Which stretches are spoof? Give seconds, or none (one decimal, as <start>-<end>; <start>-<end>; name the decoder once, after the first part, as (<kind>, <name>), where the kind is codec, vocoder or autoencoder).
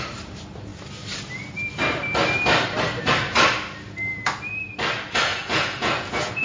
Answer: 5.3-6.4 (vocoder, Vocos)